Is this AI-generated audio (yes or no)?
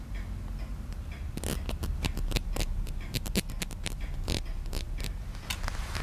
no